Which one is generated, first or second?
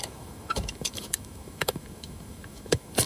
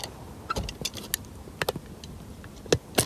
first